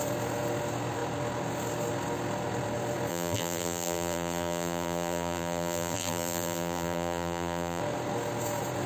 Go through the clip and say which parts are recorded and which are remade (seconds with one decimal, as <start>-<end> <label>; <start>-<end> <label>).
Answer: 0.0-3.1 recorded; 3.1-7.8 remade; 7.8-8.9 recorded